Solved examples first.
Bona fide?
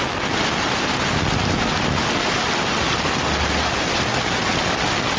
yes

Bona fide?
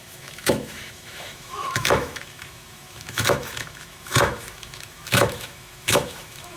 no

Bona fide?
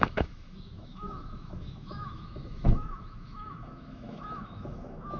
no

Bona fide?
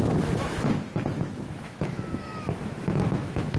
no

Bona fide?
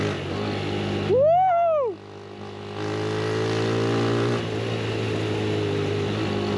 yes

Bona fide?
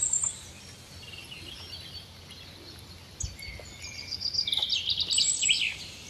yes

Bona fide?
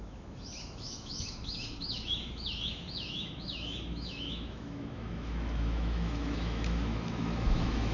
no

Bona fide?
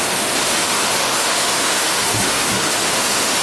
no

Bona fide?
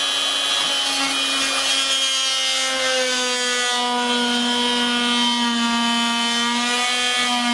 yes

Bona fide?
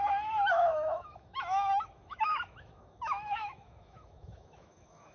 no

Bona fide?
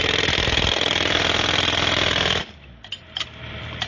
yes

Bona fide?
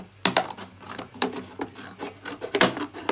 yes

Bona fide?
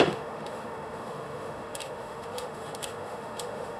no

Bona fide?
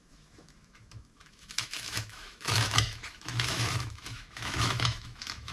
no